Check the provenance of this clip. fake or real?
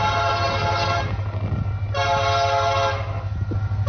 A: real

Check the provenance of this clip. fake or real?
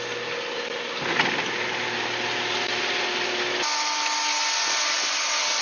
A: real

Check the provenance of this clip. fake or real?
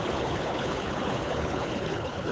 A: fake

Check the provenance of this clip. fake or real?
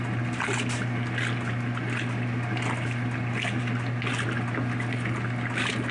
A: real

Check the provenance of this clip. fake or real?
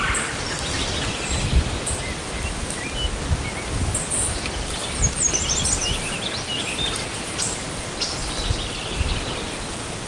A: real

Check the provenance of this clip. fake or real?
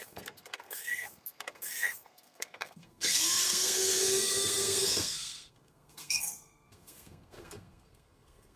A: fake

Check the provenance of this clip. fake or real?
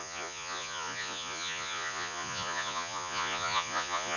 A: fake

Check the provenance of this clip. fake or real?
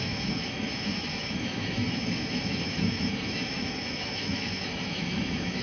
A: fake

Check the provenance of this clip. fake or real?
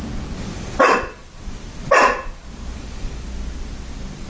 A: real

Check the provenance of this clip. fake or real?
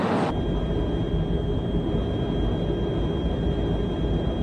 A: real